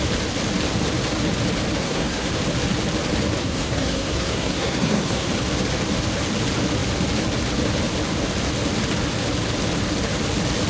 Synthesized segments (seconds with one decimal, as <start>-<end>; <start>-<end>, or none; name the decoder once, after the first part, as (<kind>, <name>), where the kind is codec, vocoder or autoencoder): 1.8-2.3 (codec, SNAC); 3.4-5.3